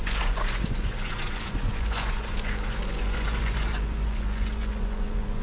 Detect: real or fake fake